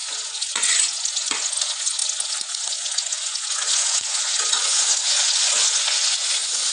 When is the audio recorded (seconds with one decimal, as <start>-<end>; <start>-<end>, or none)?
none